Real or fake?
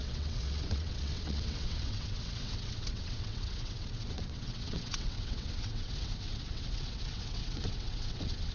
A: fake